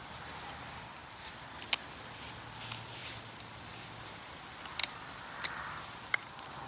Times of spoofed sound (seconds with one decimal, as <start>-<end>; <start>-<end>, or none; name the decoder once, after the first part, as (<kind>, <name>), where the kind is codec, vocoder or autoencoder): 1.0-2.1 (vocoder, BigVGAN v2); 3.0-4.3; 4.8-5.8

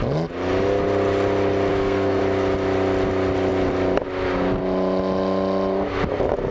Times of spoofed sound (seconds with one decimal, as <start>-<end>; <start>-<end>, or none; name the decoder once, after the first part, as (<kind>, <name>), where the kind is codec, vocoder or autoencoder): 1.7-2.2 (codec, SNAC)